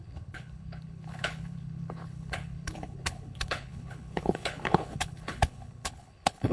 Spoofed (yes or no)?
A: yes